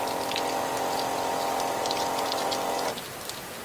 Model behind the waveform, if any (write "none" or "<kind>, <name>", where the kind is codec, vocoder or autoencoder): none